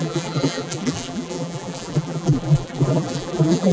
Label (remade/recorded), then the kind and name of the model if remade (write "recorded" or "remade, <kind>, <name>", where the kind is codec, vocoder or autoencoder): remade, vocoder, BigVGAN v2